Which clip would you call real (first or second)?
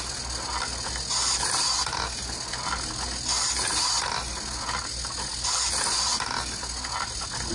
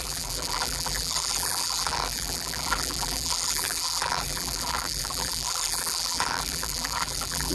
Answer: first